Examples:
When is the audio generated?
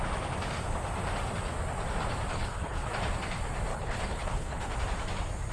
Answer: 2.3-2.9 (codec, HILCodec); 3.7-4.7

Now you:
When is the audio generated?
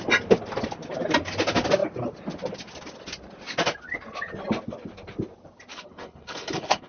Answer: 5.7-6.9 (codec, HILCodec)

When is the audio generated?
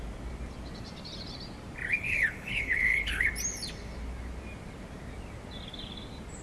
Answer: 1.9-3.3 (codec, HILCodec)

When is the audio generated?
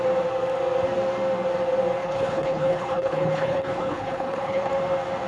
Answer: 2.0-4.7 (codec, HILCodec)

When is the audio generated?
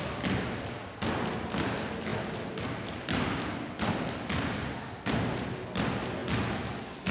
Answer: none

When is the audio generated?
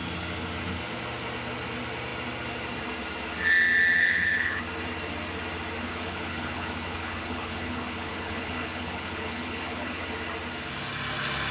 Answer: 4.0-4.6 (codec, HILCodec); 5.9-10.0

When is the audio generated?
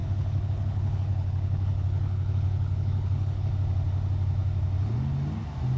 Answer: 0.0-3.5 (codec, HILCodec)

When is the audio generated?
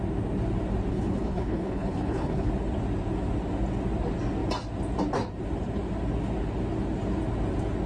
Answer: 0.9-2.5 (codec, HILCodec)